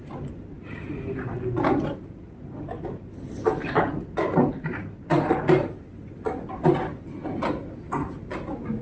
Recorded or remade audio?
recorded